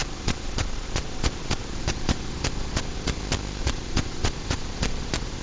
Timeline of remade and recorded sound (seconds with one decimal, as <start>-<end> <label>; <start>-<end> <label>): 0.0-3.2 remade; 3.2-3.6 recorded; 3.6-5.4 remade